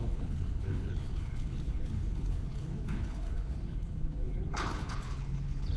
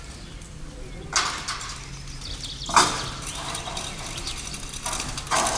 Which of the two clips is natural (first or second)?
second